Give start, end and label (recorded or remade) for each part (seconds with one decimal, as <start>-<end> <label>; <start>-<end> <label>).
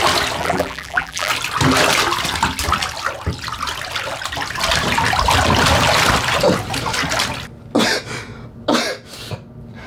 0.0-0.4 recorded; 0.4-1.3 remade; 1.3-9.9 recorded